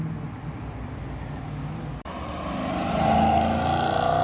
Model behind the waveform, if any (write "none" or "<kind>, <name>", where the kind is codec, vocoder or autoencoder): none